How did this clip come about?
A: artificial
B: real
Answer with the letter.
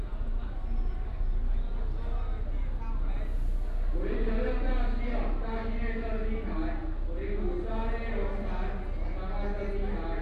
B